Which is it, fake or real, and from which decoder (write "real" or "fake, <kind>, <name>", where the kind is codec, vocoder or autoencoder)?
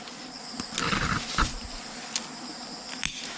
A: real